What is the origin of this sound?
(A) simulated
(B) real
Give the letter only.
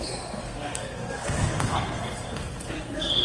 A